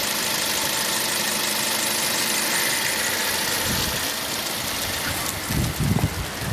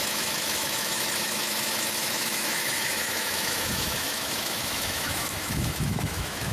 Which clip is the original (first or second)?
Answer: first